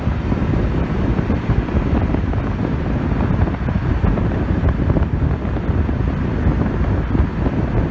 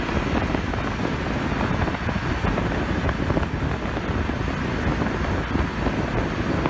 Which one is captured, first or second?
second